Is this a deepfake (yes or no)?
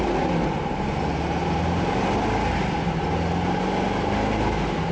no